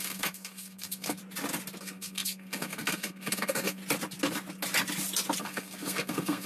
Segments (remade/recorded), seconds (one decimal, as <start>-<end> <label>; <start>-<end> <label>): 0.0-1.2 remade; 1.2-1.8 recorded; 1.8-3.8 remade; 3.8-5.4 recorded; 5.4-6.5 remade